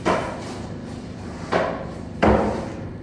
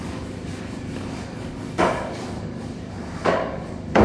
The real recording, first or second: first